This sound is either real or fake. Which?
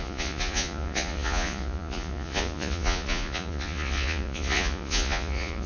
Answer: fake